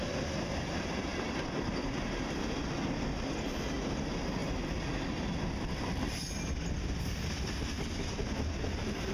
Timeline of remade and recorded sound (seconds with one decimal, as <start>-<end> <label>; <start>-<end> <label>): 0.0-9.1 recorded